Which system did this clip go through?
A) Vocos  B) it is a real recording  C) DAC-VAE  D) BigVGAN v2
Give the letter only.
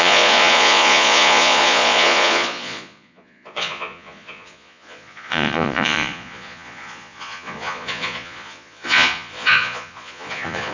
A